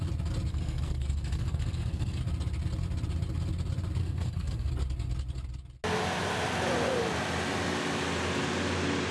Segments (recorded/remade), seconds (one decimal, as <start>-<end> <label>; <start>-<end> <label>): 0.0-0.5 recorded; 0.5-2.2 remade; 2.2-4.0 recorded; 4.0-4.7 remade; 4.7-9.1 recorded